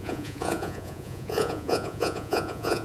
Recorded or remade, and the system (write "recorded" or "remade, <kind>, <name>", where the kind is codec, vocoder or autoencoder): remade, vocoder, Vocos